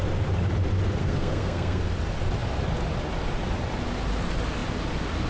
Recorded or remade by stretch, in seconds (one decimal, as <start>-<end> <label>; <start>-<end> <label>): 0.0-1.0 recorded; 1.0-1.8 remade; 1.8-5.3 recorded